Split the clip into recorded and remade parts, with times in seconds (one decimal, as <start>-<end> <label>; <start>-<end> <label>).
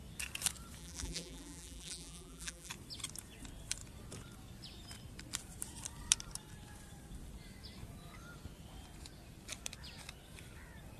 0.0-0.8 recorded; 0.8-2.7 remade; 2.7-11.0 recorded